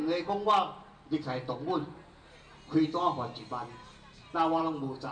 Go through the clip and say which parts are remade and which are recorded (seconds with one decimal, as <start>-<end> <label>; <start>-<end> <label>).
0.0-5.1 recorded